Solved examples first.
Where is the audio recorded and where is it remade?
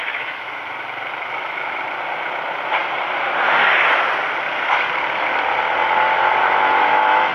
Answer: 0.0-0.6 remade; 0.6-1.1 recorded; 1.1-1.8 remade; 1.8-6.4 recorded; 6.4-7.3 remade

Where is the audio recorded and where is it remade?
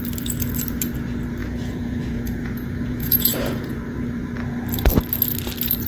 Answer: 0.0-1.4 recorded; 1.4-3.8 remade; 3.8-5.9 recorded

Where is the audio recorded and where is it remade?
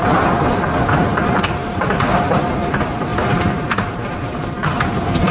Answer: 0.0-5.3 remade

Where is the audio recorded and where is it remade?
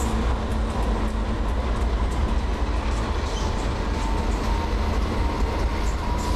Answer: 0.0-6.4 recorded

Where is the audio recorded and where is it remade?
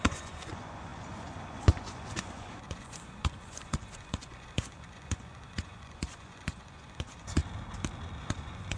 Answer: 0.0-7.4 remade; 7.4-8.2 recorded; 8.2-8.8 remade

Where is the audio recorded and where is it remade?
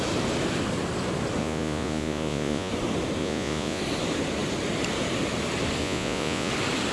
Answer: 0.0-1.4 recorded; 1.4-2.7 remade; 2.7-3.2 recorded; 3.2-3.8 remade; 3.8-5.8 recorded; 5.8-6.5 remade; 6.5-6.9 recorded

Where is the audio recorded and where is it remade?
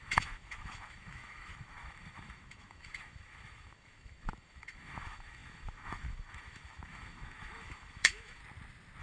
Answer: 0.0-8.4 remade; 8.4-9.0 recorded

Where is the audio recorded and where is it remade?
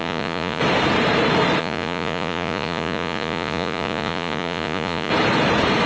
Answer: 0.0-0.6 remade; 0.6-1.6 recorded; 1.6-5.1 remade; 5.1-5.9 recorded